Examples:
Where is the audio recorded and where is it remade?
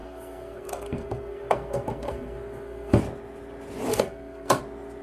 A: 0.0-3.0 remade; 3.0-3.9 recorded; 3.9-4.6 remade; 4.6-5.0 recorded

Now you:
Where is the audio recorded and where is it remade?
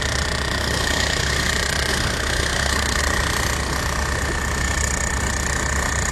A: 0.0-0.6 recorded; 0.6-1.5 remade; 1.5-1.9 recorded; 1.9-3.0 remade; 3.0-6.1 recorded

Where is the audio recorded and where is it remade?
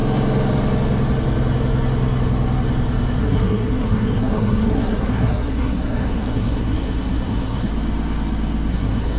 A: 0.0-3.2 recorded; 3.2-7.7 remade; 7.7-8.7 recorded; 8.7-9.2 remade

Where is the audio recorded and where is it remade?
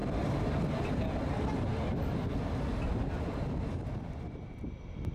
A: 0.0-5.1 recorded